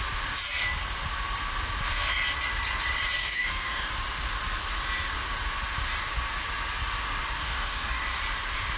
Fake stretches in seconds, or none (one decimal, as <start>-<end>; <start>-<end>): 3.2-3.9; 7.4-8.0